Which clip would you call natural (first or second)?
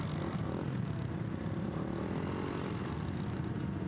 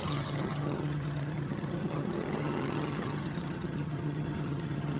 first